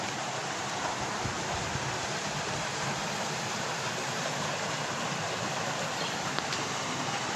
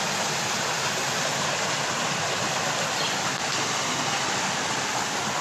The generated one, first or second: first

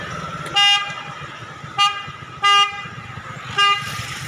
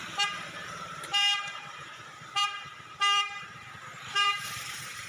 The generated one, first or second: second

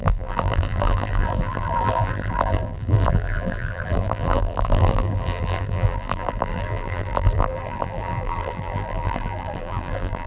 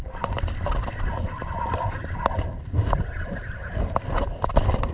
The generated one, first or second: first